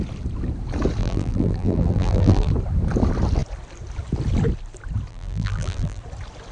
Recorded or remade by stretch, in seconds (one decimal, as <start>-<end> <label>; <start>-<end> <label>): 0.0-1.0 recorded; 1.0-2.5 remade; 2.5-5.1 recorded; 5.1-6.0 remade; 6.0-6.5 recorded